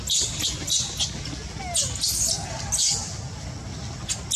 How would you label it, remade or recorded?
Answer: recorded